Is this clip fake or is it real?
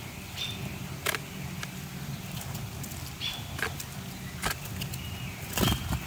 real